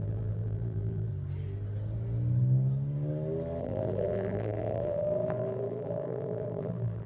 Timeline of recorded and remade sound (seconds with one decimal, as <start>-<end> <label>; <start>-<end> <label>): 0.0-1.1 remade; 1.1-3.6 recorded; 3.6-7.1 remade